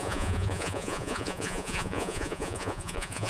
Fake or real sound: fake